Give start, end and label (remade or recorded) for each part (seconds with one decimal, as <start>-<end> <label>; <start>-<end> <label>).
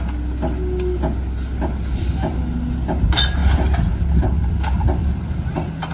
0.0-5.9 recorded